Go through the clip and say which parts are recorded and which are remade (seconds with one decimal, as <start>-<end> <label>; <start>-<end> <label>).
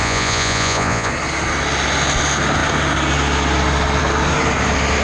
0.0-1.1 remade; 1.1-5.0 recorded